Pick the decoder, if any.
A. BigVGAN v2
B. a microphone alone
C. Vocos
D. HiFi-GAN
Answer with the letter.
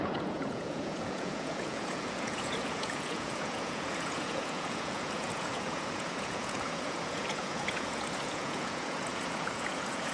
C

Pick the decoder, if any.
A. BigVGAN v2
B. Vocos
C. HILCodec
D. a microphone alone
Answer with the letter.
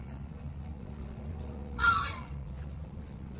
B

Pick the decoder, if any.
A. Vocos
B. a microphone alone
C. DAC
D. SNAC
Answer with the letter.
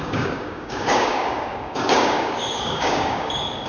C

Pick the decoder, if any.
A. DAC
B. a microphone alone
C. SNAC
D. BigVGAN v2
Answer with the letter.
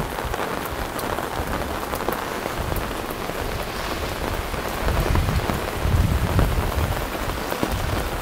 B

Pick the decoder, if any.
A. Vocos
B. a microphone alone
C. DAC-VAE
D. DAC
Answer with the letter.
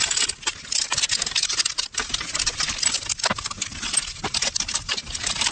B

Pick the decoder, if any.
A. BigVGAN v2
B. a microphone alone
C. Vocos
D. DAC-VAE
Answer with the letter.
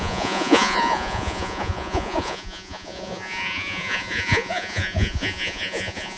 C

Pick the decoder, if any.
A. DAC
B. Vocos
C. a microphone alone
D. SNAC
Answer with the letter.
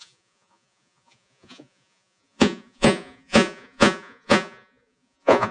B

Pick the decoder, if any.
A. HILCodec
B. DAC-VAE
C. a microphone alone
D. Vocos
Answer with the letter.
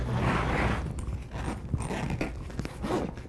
C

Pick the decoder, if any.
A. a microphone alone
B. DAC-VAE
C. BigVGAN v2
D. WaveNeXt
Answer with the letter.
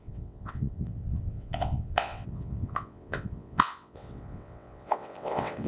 D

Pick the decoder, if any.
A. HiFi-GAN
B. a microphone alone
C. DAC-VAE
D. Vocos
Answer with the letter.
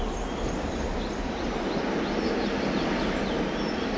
B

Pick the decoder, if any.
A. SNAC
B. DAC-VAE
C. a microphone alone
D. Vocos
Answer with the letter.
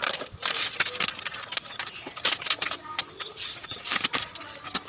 C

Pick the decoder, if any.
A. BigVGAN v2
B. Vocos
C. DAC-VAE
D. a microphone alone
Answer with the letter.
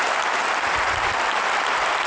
A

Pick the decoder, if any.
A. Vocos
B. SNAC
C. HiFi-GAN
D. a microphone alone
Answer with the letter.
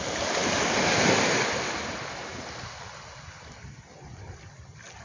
D